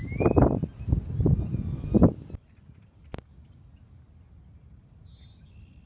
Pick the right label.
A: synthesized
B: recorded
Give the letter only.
B